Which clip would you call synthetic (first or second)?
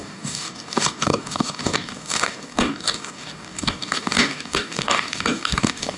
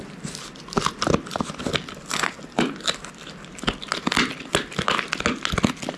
first